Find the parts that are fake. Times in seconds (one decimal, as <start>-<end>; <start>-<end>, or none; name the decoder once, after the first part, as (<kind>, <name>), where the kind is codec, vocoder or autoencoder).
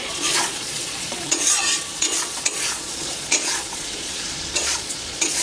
0.0-5.4 (vocoder, Vocos)